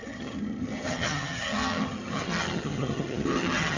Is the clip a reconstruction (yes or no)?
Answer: yes